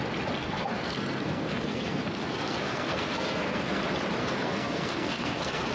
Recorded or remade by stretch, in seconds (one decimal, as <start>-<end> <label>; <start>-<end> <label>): 0.0-0.4 recorded; 0.4-3.8 remade; 3.8-4.2 recorded; 4.2-5.7 remade

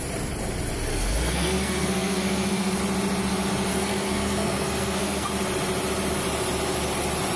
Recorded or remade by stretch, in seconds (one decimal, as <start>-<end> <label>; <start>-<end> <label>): 0.0-0.9 recorded; 0.9-2.8 remade; 2.8-3.7 recorded; 3.7-5.3 remade; 5.3-7.4 recorded

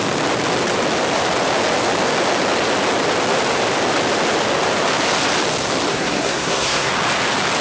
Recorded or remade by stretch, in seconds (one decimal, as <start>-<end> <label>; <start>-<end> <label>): 0.0-5.9 recorded; 5.9-6.9 remade; 6.9-7.6 recorded

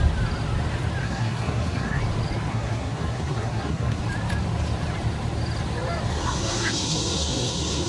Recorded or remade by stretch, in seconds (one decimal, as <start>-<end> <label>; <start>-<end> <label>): 0.0-1.0 recorded; 1.0-2.0 remade; 2.0-2.5 recorded; 2.5-4.0 remade; 4.0-6.1 recorded; 6.1-7.9 remade

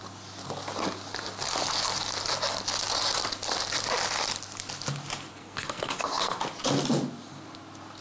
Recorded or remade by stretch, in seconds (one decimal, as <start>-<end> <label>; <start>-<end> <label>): 0.0-5.3 recorded; 5.3-6.4 remade; 6.4-8.0 recorded

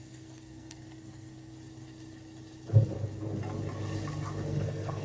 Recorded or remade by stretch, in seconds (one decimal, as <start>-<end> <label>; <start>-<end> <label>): 0.0-1.5 remade; 1.5-4.5 recorded; 4.5-5.0 remade

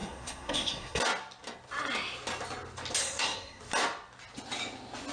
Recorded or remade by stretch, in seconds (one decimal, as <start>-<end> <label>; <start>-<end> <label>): 0.0-1.0 remade; 1.0-3.0 recorded; 3.0-3.6 remade; 3.6-5.1 recorded